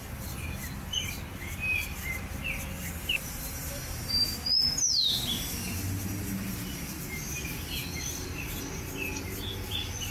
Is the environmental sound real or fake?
real